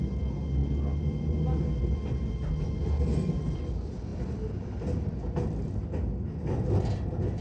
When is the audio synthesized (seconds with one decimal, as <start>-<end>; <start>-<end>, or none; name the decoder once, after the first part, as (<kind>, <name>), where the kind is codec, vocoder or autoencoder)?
none